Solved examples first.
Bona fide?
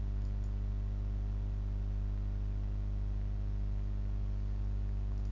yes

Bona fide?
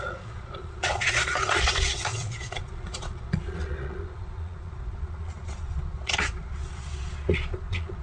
no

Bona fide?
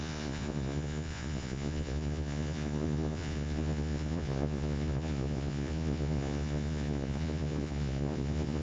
no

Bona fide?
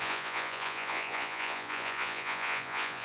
no